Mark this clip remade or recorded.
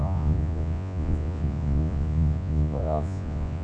remade